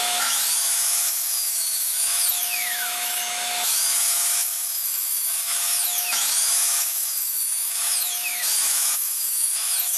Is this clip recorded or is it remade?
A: remade